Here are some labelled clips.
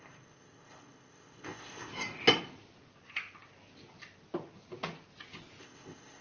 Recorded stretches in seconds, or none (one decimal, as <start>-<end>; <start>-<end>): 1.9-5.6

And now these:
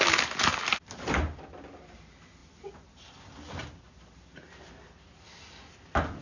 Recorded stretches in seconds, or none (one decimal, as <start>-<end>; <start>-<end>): 0.0-6.2

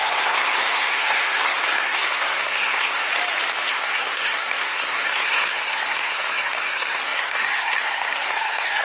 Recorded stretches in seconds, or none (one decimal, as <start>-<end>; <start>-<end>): 3.0-3.7